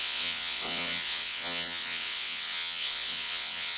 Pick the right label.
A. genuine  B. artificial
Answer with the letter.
B